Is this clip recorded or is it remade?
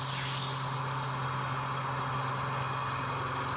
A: recorded